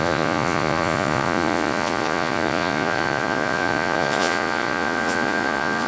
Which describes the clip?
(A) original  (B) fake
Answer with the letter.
B